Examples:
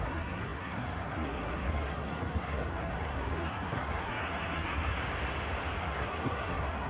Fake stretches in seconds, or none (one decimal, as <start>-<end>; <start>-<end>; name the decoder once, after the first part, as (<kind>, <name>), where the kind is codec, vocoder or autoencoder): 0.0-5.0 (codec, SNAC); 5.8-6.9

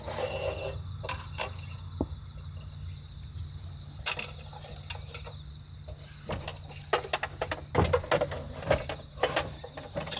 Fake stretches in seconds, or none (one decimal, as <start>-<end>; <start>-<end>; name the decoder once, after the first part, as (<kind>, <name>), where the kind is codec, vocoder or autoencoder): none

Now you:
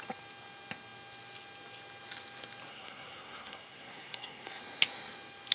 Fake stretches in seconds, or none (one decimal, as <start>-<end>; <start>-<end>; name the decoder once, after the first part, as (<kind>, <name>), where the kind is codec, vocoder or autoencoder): 2.7-4.6 (codec, SNAC)

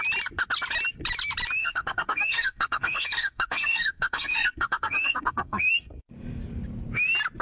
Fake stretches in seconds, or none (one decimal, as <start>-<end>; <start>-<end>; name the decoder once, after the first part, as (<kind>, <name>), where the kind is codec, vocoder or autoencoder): 1.6-6.0 (codec, SNAC)

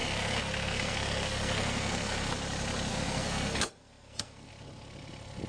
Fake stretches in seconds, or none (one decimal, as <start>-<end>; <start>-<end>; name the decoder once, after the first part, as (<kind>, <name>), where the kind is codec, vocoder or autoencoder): 0.0-2.3 (codec, SNAC); 2.9-4.5